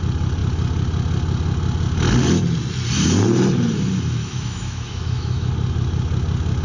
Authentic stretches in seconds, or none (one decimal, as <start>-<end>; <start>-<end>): 0.0-4.2; 5.5-6.6